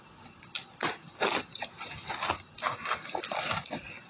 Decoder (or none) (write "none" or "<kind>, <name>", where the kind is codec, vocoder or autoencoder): none